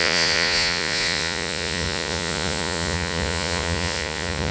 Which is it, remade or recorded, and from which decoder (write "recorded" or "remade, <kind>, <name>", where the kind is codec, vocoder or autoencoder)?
remade, vocoder, Vocos